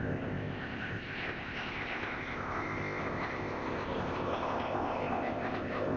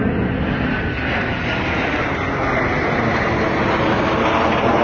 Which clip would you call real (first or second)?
second